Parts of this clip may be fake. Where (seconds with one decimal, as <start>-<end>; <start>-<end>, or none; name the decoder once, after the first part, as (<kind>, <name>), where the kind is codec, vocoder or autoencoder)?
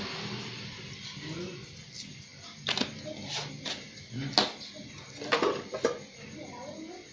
none